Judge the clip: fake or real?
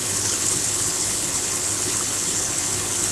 fake